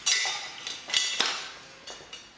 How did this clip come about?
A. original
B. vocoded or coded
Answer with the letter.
A